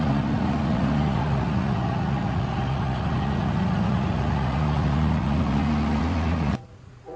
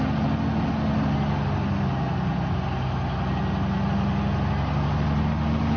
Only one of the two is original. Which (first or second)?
second